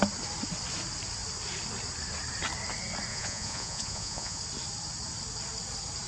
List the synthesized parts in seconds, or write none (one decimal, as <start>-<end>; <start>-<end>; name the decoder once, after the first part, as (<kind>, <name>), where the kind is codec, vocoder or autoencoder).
3.1-4.4 (vocoder, Vocos)